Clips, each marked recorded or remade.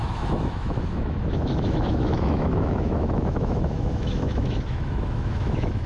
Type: remade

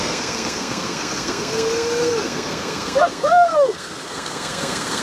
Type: remade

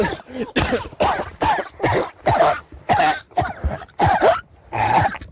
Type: recorded